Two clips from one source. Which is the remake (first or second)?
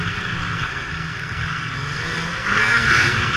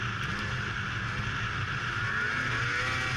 first